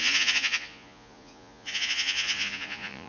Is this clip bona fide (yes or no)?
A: no